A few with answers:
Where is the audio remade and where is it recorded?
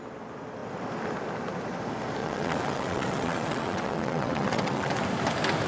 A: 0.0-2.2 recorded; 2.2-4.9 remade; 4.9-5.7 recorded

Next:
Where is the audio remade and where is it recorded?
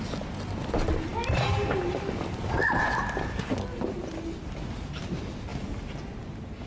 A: 0.0-1.1 recorded; 1.1-2.8 remade; 2.8-6.7 recorded